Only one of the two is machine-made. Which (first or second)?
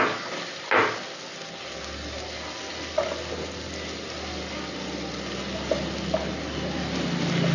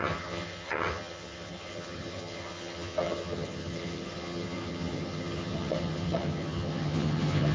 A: second